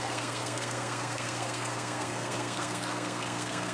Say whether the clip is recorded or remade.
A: remade